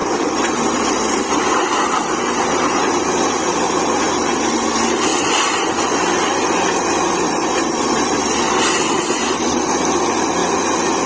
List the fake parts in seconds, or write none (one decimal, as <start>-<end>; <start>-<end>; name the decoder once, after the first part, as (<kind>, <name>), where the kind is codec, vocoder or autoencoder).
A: 0.0-3.0 (vocoder, BigVGAN v2); 5.1-9.7